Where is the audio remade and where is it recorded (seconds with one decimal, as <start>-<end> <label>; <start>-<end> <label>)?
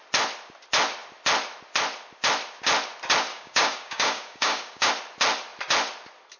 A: 0.0-3.3 recorded; 3.3-4.9 remade; 4.9-6.4 recorded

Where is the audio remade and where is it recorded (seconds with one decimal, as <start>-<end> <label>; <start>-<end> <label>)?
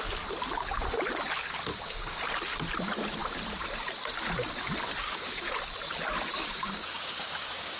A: 0.0-1.7 recorded; 1.7-2.2 remade; 2.2-5.0 recorded; 5.0-5.5 remade; 5.5-6.6 recorded; 6.6-7.8 remade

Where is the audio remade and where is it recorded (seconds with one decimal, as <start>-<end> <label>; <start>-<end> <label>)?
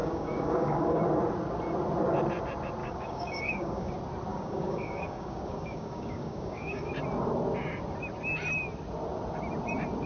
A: 0.0-1.0 remade; 1.0-2.8 recorded; 2.8-3.9 remade; 3.9-4.3 recorded; 4.3-6.9 remade; 6.9-10.1 recorded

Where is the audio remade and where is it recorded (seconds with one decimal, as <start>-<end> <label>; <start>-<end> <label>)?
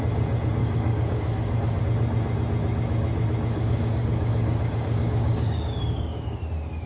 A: 0.0-0.6 recorded; 0.6-1.8 remade; 1.8-3.5 recorded; 3.5-6.4 remade; 6.4-6.9 recorded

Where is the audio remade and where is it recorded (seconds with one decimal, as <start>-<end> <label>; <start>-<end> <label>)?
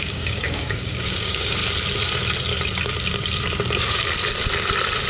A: 0.0-1.6 remade; 1.6-5.1 recorded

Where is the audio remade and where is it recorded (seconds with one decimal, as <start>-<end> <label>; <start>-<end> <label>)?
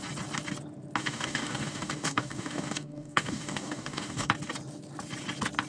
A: 0.0-1.0 recorded; 1.0-4.3 remade; 4.3-5.7 recorded